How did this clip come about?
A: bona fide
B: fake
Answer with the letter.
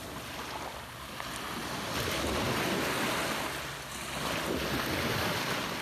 A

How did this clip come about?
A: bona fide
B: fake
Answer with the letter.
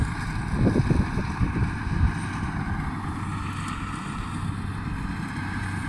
A